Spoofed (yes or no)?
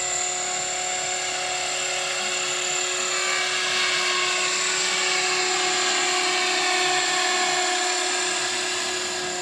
no